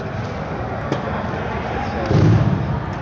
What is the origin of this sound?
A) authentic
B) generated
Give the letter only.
A